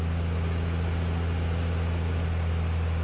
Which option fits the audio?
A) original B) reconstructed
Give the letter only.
A